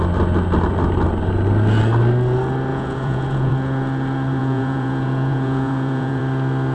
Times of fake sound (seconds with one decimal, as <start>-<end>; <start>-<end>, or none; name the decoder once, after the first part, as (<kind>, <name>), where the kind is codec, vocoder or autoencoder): 2.7-3.5 (vocoder, Vocos); 4.4-6.2